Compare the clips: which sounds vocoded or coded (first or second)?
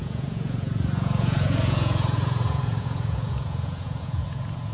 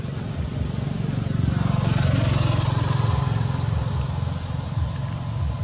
first